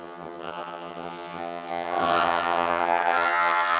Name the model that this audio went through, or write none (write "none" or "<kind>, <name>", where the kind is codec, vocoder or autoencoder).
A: vocoder, HiFi-GAN